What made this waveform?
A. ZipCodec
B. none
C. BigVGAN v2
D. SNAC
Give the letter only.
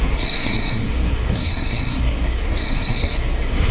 D